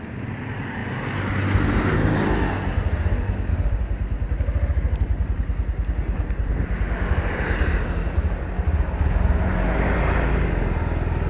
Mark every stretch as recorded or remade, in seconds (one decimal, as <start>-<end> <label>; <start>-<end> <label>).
0.0-11.3 recorded